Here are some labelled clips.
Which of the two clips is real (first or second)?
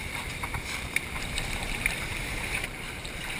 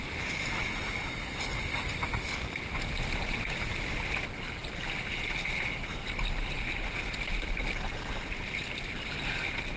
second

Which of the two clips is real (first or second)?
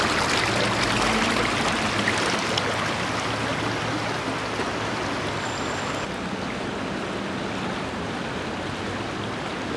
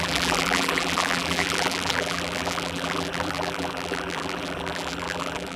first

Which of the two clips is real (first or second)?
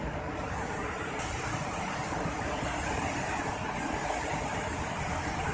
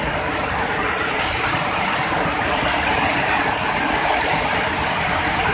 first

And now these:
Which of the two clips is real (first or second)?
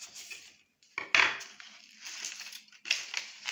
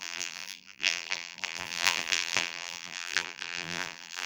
first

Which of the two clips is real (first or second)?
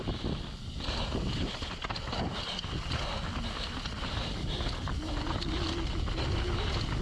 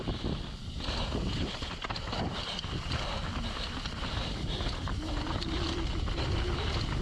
first